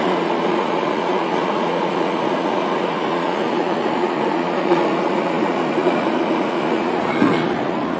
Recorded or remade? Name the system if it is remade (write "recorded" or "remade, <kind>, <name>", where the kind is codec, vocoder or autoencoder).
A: remade, vocoder, Vocos